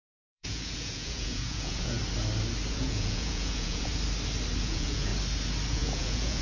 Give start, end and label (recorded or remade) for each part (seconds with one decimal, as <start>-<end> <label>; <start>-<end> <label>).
0.0-2.0 remade; 2.0-2.7 recorded; 2.7-3.9 remade; 3.9-4.6 recorded; 4.6-5.1 remade; 5.1-5.7 recorded; 5.7-6.4 remade

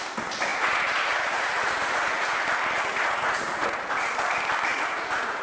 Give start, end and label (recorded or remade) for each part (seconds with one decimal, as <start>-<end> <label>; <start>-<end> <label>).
0.0-0.5 recorded; 0.5-2.4 remade; 2.4-2.9 recorded; 2.9-4.1 remade; 4.1-4.7 recorded; 4.7-5.4 remade

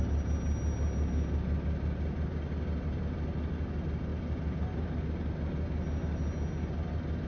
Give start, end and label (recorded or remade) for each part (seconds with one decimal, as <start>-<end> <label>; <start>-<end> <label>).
0.0-7.3 recorded

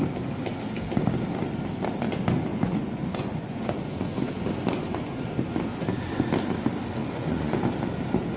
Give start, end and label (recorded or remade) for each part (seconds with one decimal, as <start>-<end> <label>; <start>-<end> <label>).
0.0-2.5 recorded; 2.5-4.4 remade; 4.4-7.0 recorded; 7.0-7.8 remade; 7.8-8.4 recorded

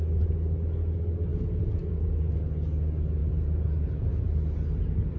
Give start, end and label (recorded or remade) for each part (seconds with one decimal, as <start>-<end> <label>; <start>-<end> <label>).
0.0-1.3 recorded; 1.3-2.0 remade; 2.0-3.2 recorded; 3.2-4.1 remade; 4.1-5.2 recorded

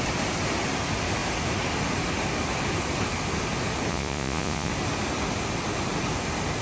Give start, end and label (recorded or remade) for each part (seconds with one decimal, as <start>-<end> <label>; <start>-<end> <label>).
0.0-3.9 recorded; 3.9-4.7 remade; 4.7-6.6 recorded

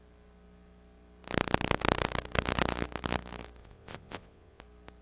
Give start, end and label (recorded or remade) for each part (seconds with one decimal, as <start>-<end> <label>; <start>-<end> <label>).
0.0-3.6 recorded; 3.6-4.6 remade; 4.6-5.0 recorded